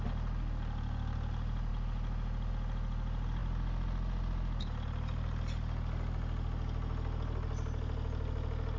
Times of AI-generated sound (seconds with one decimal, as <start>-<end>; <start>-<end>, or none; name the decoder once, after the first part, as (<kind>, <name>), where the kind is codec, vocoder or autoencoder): none